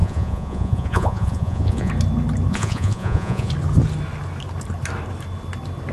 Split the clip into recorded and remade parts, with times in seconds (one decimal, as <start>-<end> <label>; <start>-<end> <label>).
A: 0.0-1.9 remade; 1.9-2.5 recorded; 2.5-3.5 remade; 3.5-5.9 recorded

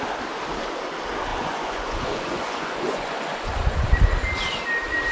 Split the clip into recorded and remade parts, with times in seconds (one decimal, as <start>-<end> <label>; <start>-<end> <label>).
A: 0.0-1.3 recorded; 1.3-3.9 remade; 3.9-5.1 recorded

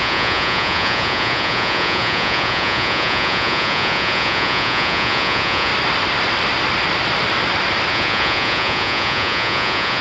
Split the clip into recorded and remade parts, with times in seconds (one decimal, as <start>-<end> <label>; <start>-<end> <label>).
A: 0.0-5.7 remade; 5.7-7.9 recorded; 7.9-10.0 remade

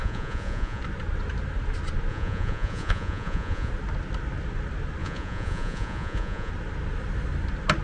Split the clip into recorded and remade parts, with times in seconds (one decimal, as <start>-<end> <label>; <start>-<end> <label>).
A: 0.0-0.8 remade; 0.8-2.1 recorded; 2.1-3.7 remade; 3.7-5.0 recorded; 5.0-6.5 remade; 6.5-7.8 recorded

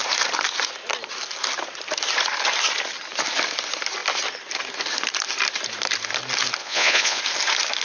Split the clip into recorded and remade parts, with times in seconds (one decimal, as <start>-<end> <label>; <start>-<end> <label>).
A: 0.0-6.6 recorded; 6.6-7.2 remade; 7.2-7.8 recorded

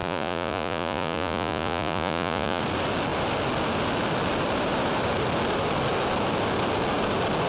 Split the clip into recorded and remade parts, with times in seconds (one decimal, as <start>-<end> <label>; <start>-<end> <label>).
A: 0.0-2.6 remade; 2.6-7.5 recorded